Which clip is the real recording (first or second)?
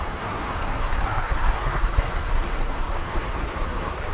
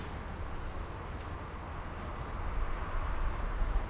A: second